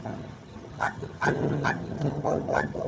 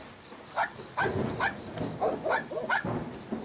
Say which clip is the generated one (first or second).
first